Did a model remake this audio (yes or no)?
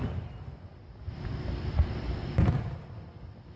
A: no